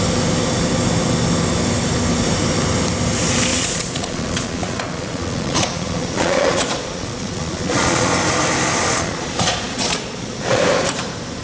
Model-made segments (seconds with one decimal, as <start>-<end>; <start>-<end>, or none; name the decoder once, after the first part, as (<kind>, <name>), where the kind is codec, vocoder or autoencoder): 3.5-8.1 (vocoder, Vocos); 8.9-10.6